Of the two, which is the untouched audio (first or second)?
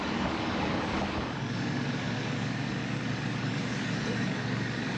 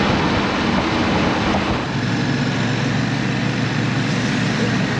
second